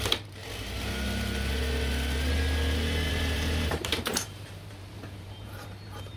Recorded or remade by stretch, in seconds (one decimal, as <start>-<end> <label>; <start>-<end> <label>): 0.0-0.4 remade; 0.4-3.1 recorded; 3.1-6.2 remade

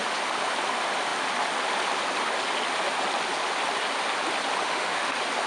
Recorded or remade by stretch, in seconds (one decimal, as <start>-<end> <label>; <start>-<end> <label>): 0.0-4.6 recorded; 4.6-5.1 remade; 5.1-5.5 recorded

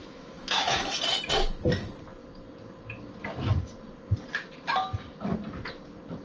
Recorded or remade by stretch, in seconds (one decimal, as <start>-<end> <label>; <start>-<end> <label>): 0.0-1.0 remade; 1.0-6.2 recorded

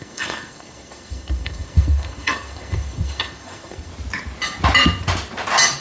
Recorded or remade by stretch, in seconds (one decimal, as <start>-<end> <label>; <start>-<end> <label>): 0.0-3.9 remade; 3.9-5.8 recorded

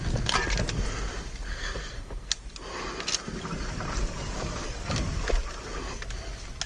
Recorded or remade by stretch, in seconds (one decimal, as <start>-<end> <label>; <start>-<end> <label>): 0.0-1.5 recorded; 1.5-2.3 remade; 2.3-6.7 recorded